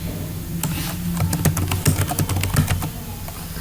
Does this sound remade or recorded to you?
recorded